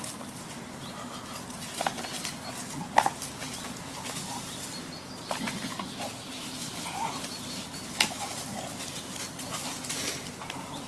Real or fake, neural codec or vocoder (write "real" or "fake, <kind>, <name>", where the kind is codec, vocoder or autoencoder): real